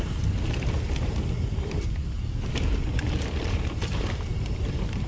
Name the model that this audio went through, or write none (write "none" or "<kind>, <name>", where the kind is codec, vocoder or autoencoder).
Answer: vocoder, BigVGAN v2